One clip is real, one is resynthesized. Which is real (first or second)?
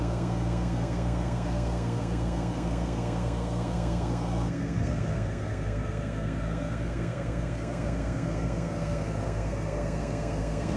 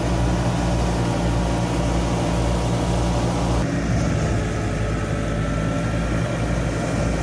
second